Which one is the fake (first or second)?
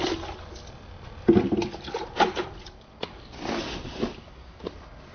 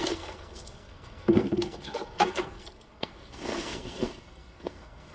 second